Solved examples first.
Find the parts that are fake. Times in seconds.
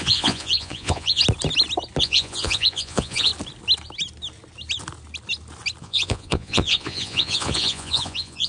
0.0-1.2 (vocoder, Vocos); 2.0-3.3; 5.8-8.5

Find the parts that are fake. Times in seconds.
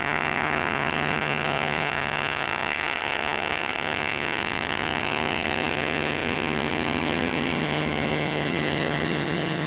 0.0-9.7 (vocoder, HiFi-GAN)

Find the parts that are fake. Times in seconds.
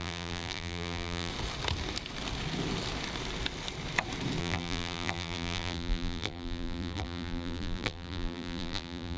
0.0-1.3 (vocoder, BigVGAN v2); 4.4-9.2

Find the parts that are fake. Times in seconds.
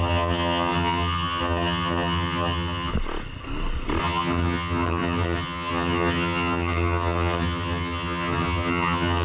0.0-2.9 (vocoder, HiFi-GAN); 4.0-9.2